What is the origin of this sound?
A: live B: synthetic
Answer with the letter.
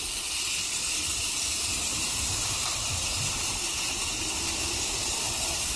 A